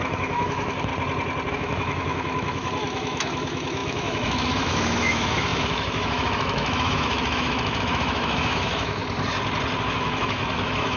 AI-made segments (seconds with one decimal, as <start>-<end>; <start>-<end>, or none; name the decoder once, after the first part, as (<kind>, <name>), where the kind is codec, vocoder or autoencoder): 0.0-0.9 (autoencoder, DAC-VAE); 1.5-9.0; 9.8-11.0